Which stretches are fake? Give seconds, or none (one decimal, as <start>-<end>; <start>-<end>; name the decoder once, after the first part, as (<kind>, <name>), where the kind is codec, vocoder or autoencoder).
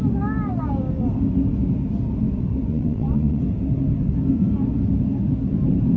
2.7-3.4 (vocoder, Vocos)